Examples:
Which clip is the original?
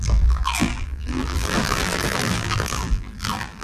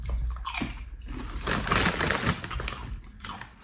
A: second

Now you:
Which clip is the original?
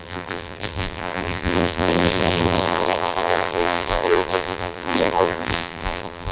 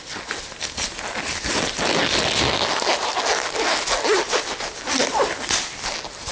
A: second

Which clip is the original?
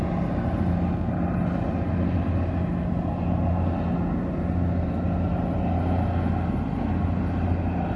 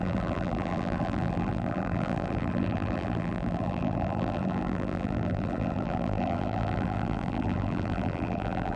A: first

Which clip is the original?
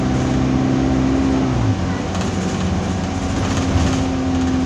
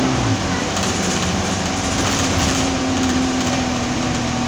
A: first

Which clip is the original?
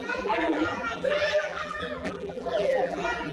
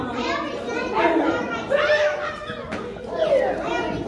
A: second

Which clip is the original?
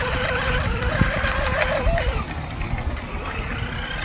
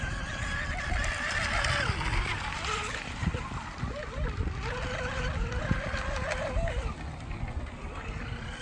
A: second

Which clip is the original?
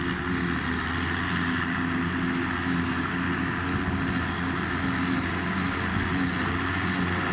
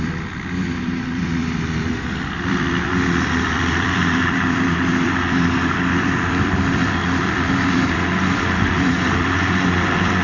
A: first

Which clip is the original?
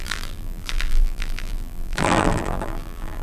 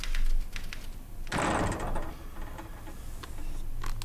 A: second